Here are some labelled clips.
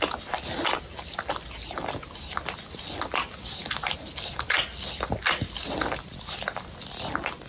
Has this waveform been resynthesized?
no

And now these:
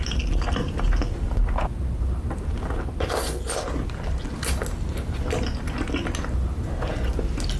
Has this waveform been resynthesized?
no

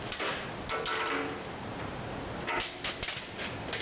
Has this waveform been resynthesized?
no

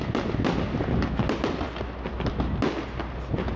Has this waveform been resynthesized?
no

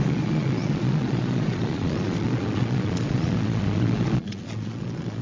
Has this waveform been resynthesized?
yes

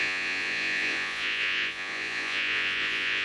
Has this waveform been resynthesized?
yes